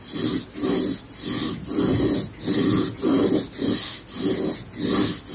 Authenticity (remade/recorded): recorded